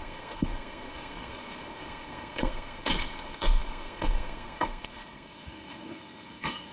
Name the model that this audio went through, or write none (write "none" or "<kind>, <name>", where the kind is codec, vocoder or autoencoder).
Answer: codec, SNAC